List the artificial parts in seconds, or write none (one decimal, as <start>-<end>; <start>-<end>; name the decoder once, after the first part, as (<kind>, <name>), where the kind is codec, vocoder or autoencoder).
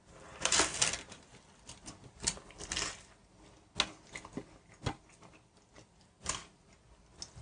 none